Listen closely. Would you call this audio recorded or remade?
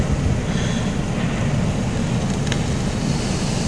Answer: recorded